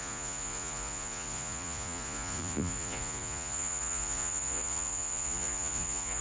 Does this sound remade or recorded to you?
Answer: remade